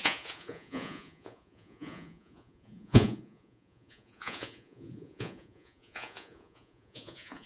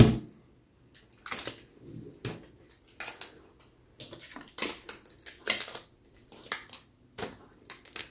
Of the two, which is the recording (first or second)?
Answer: second